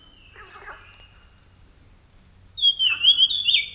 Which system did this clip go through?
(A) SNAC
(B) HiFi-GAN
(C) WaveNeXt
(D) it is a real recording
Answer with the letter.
D